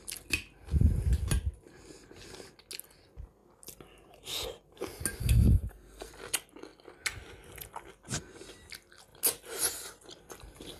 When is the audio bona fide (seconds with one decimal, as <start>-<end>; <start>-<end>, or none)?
0.0-5.2; 6.1-10.8